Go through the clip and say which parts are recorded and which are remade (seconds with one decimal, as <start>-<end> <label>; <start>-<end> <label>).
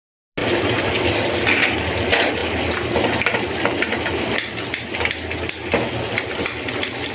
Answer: 0.0-7.1 recorded